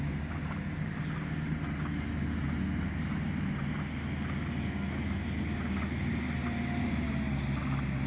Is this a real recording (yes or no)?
yes